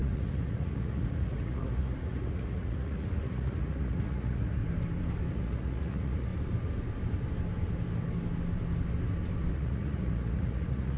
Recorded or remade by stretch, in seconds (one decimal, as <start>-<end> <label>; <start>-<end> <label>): 0.0-4.6 remade; 4.6-5.3 recorded; 5.3-6.3 remade; 6.3-9.5 recorded; 9.5-11.0 remade